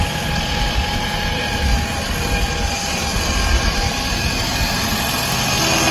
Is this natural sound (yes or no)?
yes